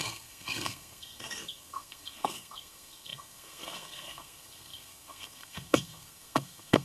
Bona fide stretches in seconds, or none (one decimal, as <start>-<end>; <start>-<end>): none